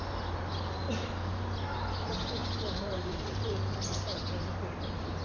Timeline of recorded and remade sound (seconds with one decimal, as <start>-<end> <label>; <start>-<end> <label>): 0.0-2.4 recorded; 2.4-3.5 remade; 3.5-5.2 recorded